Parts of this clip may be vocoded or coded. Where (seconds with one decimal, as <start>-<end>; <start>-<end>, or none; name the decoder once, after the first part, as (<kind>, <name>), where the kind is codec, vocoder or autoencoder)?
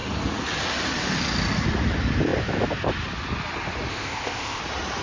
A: 3.9-4.6 (codec, ZipCodec)